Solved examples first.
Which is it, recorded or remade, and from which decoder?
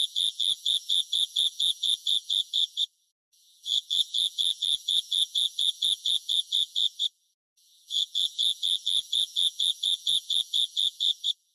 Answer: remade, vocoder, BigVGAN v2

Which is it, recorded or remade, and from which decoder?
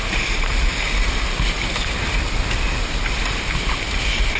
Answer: recorded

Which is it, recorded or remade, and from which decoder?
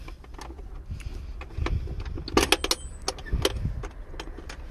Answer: recorded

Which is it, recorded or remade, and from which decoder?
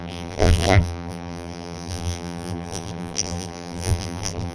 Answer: remade, vocoder, BigVGAN v2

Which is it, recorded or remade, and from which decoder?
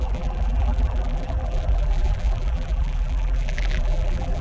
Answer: remade, vocoder, BigVGAN v2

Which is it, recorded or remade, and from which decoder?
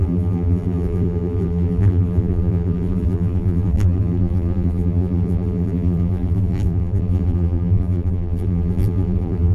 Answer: remade, vocoder, BigVGAN v2